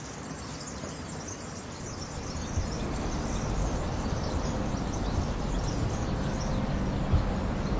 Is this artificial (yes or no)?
no